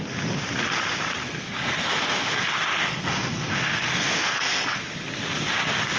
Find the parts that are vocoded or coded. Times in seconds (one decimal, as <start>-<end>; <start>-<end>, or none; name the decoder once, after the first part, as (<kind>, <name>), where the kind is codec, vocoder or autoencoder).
1.2-2.4 (codec, SNAC); 2.8-4.8